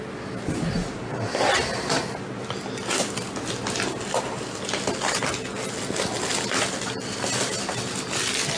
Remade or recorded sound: recorded